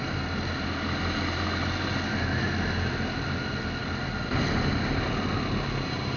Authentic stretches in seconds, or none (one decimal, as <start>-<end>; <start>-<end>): 0.0-6.2